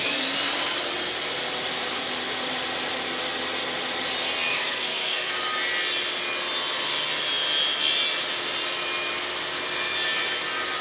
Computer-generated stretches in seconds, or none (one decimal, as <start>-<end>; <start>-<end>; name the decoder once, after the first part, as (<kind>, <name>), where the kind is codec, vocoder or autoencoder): 4.5-5.3 (codec, SNAC)